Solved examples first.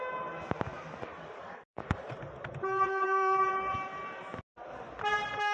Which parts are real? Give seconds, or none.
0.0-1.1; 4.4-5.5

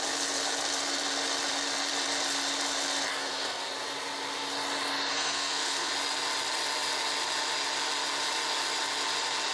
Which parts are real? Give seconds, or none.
0.0-3.1; 3.7-5.1; 5.9-9.5

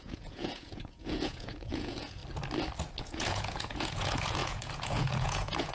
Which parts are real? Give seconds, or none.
2.2-3.0

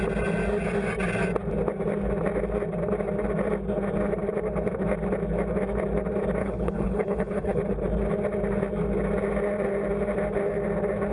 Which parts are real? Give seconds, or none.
0.0-6.4; 7.6-11.1

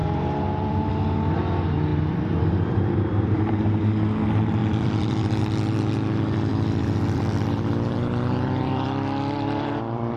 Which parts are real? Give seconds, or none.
0.9-1.9; 3.3-4.6; 5.4-6.5

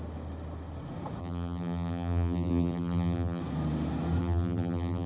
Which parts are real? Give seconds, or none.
0.0-1.2; 3.4-4.2

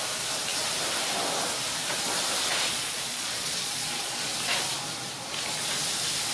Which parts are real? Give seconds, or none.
0.0-2.5; 4.3-6.3